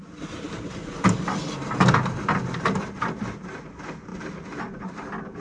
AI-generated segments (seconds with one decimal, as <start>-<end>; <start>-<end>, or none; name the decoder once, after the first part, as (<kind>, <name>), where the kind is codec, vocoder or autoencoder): none